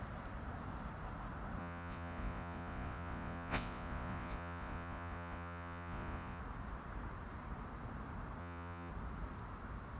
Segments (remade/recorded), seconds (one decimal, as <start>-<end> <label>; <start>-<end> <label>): 0.0-1.6 recorded; 1.6-6.4 remade; 6.4-8.4 recorded; 8.4-8.9 remade; 8.9-10.0 recorded